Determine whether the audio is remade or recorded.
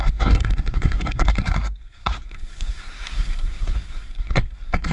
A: remade